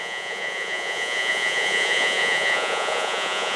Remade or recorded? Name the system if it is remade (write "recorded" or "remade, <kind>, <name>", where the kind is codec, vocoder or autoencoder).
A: remade, vocoder, Vocos